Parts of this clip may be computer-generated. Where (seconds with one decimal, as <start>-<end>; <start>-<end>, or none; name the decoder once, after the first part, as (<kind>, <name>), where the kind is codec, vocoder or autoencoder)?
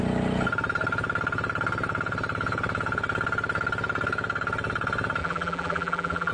5.2-6.3 (vocoder, BigVGAN v2)